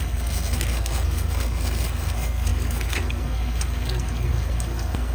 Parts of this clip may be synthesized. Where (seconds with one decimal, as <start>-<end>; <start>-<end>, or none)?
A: 0.0-5.1